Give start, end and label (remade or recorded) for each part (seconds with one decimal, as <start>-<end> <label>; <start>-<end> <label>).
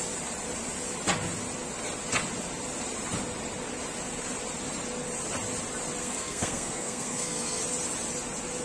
0.0-6.0 recorded; 6.0-7.6 remade; 7.6-8.6 recorded